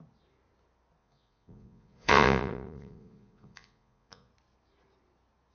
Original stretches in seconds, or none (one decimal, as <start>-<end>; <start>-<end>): 0.0-1.0; 4.3-5.5